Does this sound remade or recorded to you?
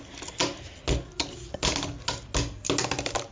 recorded